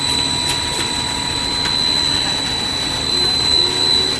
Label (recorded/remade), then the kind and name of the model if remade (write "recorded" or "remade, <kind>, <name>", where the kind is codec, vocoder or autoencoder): recorded